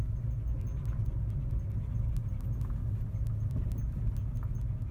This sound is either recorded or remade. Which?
recorded